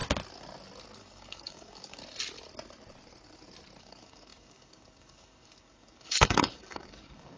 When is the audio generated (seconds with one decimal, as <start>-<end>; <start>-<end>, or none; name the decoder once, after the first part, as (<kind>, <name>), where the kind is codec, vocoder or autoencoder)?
1.0-2.0 (codec, DAC); 3.8-7.4